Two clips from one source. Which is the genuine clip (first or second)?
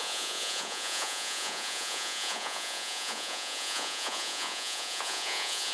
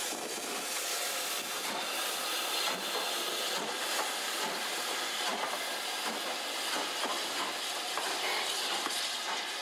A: second